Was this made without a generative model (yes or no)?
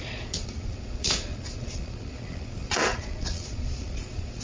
no